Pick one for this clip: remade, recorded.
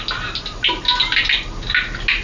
recorded